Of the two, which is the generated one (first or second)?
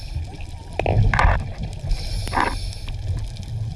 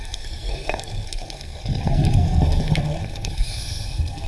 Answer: second